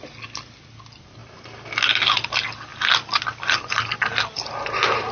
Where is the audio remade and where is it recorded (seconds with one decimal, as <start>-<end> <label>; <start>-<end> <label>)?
0.0-5.1 recorded